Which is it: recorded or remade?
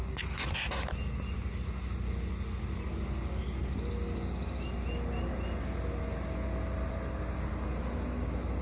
recorded